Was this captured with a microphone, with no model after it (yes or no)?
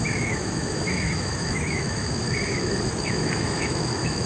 no